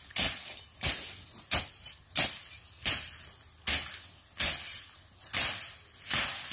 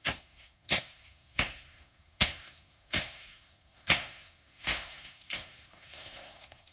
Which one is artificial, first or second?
second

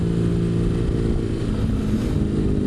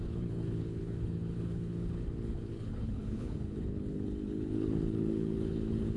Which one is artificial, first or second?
second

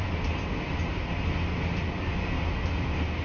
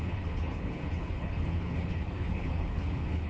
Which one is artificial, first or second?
second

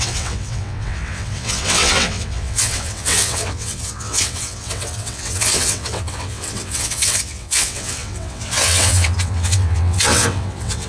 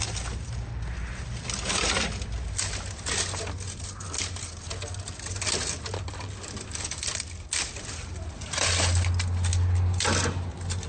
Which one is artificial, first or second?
first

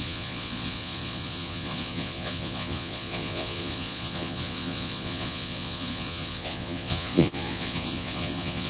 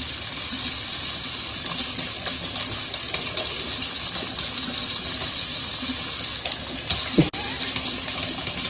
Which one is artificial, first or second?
first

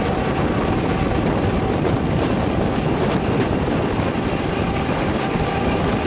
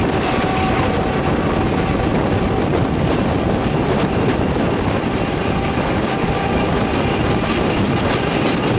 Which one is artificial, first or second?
first